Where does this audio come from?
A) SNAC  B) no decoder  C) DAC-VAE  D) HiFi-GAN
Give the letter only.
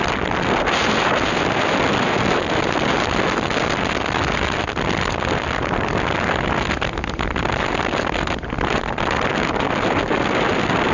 B